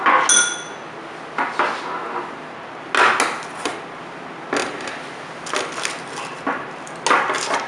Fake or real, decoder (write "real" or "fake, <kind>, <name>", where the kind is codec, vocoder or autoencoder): real